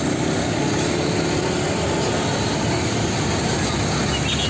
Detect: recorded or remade recorded